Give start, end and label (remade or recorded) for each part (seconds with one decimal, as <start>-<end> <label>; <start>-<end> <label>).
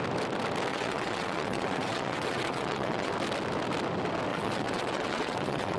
0.0-0.7 recorded; 0.7-3.1 remade; 3.1-4.3 recorded; 4.3-5.8 remade